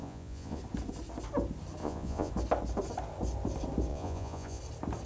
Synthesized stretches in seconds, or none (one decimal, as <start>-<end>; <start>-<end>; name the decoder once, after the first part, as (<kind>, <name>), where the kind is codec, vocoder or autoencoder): 0.0-0.6 (vocoder, Vocos); 1.8-2.3; 3.9-4.6